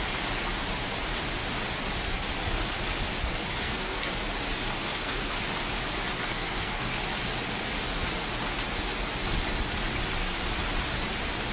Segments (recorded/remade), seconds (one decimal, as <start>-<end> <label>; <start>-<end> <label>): 0.0-3.4 recorded; 3.4-4.1 remade; 4.1-4.8 recorded; 4.8-5.4 remade; 5.4-6.3 recorded; 6.3-7.0 remade; 7.0-11.5 recorded